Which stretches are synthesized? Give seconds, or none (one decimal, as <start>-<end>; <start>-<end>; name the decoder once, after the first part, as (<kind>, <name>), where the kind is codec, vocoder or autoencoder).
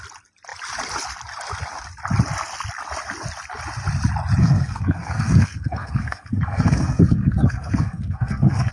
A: 4.4-8.7 (codec, SNAC)